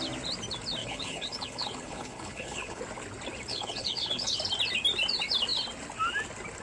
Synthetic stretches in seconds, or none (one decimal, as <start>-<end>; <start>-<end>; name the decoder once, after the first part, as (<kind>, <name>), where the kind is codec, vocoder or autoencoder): 0.8-2.8 (codec, HILCodec); 3.5-4.4